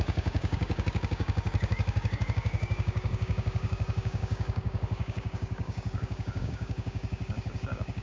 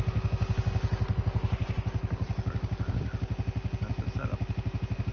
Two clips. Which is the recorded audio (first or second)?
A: second